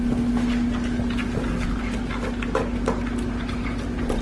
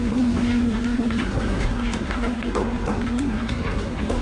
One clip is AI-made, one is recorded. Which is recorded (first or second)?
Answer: first